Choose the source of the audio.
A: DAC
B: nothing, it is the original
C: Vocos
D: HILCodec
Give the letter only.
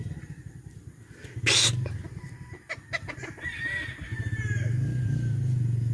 B